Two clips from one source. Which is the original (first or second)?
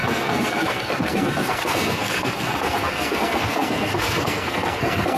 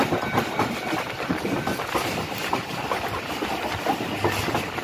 second